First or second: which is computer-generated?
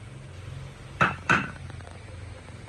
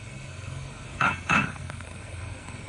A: second